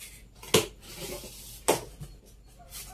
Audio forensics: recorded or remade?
recorded